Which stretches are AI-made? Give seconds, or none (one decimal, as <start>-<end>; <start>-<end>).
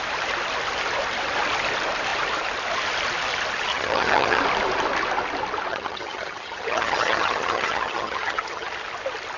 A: 3.7-4.4; 5.7-8.7